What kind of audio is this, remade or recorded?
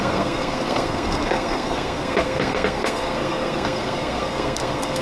remade